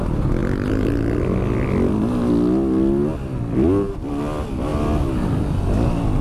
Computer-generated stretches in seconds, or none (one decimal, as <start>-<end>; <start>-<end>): none